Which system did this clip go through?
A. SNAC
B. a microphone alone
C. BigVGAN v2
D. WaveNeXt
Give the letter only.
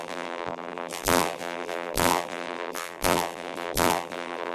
C